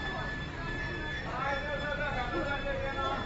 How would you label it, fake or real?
real